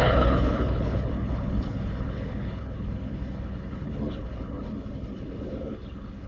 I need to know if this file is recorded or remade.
remade